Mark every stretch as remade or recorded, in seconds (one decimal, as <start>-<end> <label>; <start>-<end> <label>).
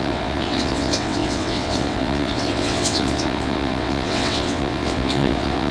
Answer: 0.0-5.7 remade